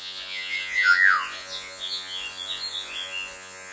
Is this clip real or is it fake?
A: fake